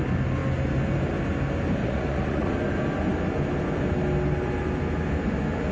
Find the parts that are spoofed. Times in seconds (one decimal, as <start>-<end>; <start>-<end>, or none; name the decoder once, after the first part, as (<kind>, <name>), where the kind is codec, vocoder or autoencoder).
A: 1.8-2.5 (vocoder, Vocos)